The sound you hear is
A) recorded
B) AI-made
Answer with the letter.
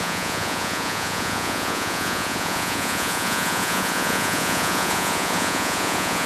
B